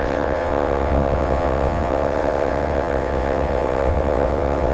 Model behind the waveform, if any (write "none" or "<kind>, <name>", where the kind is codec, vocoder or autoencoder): vocoder, WaveNeXt